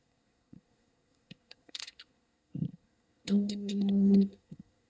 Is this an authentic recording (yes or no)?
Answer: no